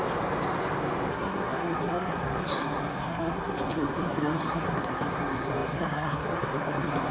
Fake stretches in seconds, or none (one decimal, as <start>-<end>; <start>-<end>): 1.1-7.1

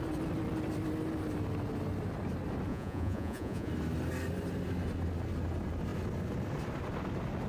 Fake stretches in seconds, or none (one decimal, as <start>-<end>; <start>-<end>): 2.7-3.7

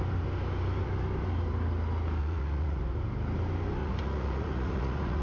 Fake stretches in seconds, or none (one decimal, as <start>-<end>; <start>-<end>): 2.2-2.8; 3.8-5.2

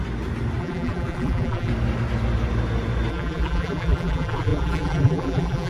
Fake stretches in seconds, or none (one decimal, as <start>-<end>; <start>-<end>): 0.6-1.7; 3.1-5.7

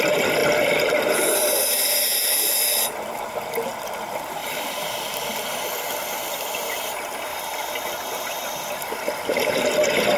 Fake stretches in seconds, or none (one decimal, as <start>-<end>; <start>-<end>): 4.4-6.6; 7.3-9.5

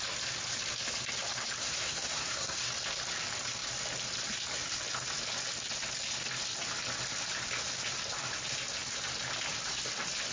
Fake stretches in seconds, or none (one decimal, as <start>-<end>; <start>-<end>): 1.6-2.7